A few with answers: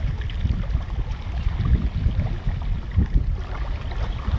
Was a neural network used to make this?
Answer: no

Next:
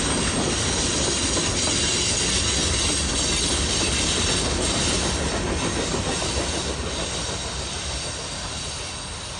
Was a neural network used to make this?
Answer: no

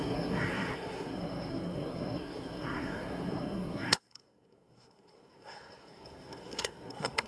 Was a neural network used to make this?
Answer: yes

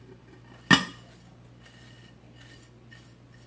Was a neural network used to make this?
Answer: no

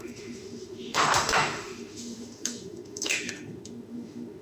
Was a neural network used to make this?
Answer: yes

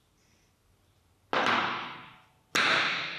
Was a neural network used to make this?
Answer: no